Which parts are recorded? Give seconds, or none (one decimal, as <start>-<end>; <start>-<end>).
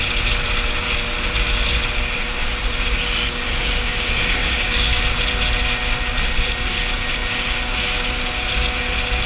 0.0-3.2; 5.0-9.3